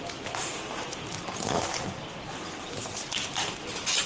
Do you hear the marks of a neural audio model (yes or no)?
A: no